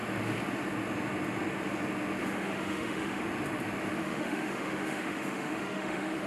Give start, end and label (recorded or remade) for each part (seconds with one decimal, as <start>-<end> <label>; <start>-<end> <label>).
0.0-2.2 recorded; 2.2-3.2 remade; 3.2-4.0 recorded; 4.0-6.3 remade